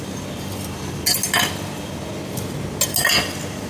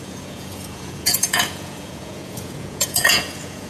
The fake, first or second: second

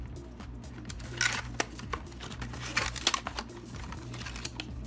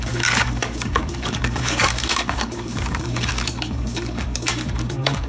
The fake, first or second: second